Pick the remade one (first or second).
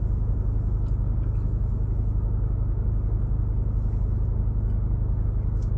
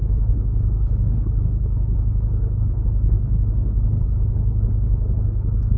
second